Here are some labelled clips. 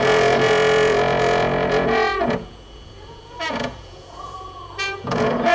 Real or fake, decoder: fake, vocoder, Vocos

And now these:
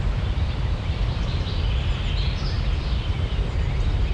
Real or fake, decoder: real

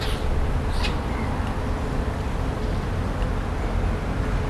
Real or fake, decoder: real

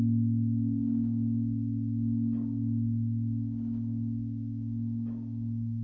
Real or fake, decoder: real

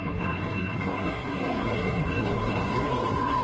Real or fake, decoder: fake, codec, SNAC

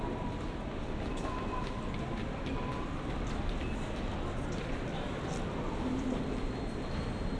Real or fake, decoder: real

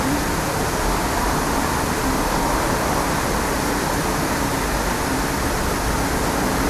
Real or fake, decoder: real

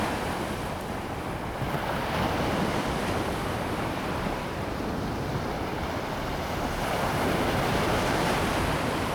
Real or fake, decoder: fake, vocoder, BigVGAN v2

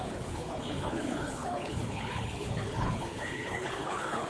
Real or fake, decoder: fake, codec, HILCodec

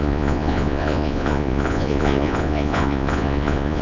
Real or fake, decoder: fake, vocoder, Vocos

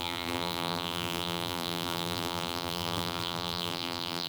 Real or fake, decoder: fake, vocoder, BigVGAN v2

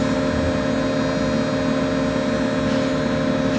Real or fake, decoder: real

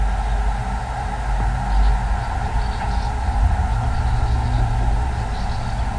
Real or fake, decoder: real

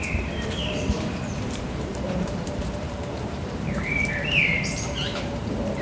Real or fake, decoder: fake, vocoder, BigVGAN v2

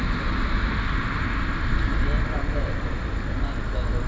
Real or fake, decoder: real